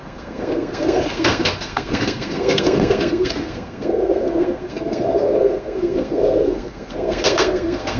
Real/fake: fake